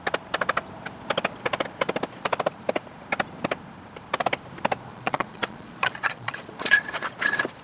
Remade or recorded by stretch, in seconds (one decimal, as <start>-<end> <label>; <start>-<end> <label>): 0.0-4.9 recorded; 4.9-7.1 remade; 7.1-7.6 recorded

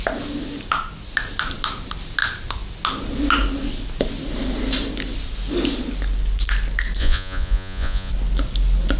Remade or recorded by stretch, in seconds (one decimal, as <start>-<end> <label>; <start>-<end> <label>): 0.0-7.0 recorded; 7.0-8.1 remade; 8.1-9.0 recorded